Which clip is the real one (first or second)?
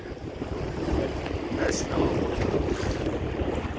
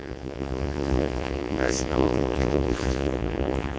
first